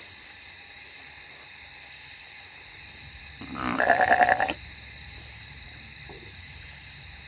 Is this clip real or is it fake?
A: fake